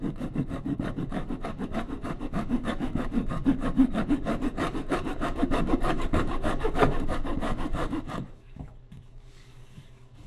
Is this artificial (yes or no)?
yes